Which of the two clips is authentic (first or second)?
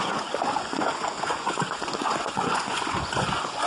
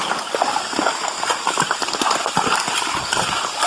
second